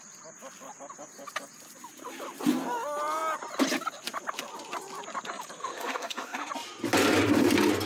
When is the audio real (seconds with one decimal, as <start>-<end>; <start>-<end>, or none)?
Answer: 0.0-5.6; 6.5-7.9